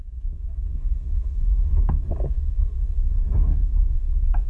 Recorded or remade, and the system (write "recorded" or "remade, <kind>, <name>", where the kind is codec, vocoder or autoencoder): remade, codec, SNAC